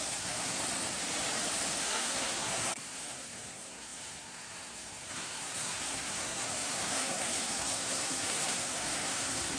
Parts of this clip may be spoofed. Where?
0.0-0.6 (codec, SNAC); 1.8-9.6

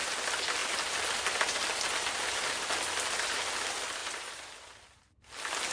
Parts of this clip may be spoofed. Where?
4.0-4.5 (vocoder, BigVGAN v2)

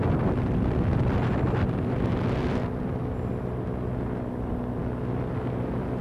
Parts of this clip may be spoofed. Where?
none

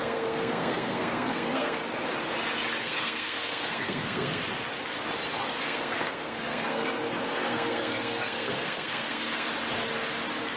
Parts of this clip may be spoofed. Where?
0.0-1.8 (codec, SNAC); 2.8-4.4; 5.5-9.5

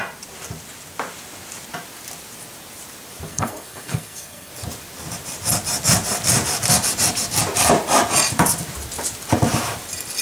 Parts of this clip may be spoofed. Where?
3.3-4.5 (codec, SNAC)

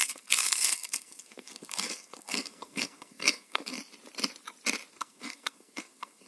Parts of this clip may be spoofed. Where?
0.0-3.8 (codec, SNAC); 4.9-6.3

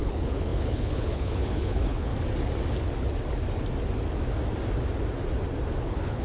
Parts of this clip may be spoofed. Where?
0.0-2.1 (codec, HILCodec); 5.8-6.2

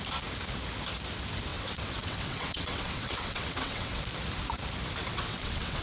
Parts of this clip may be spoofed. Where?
1.5-4.0 (vocoder, WaveNeXt); 5.1-5.8